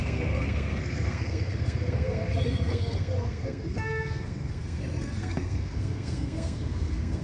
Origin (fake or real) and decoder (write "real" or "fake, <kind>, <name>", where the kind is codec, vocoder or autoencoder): fake, codec, SNAC